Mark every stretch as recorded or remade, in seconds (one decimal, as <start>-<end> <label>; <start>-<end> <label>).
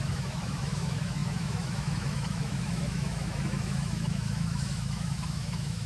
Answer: 0.0-5.9 remade